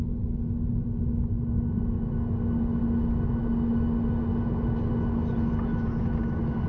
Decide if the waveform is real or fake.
real